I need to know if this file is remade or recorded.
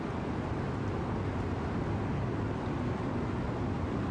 recorded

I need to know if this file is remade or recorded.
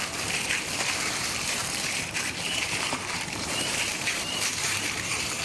remade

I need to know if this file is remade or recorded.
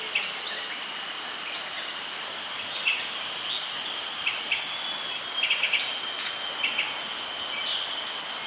recorded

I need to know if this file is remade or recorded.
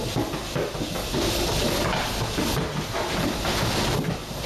recorded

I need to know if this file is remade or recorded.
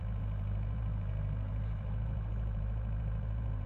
remade